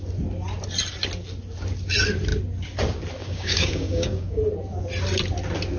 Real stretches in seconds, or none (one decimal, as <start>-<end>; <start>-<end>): 0.0-3.2; 4.4-5.8